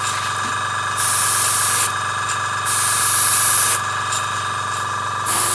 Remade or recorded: recorded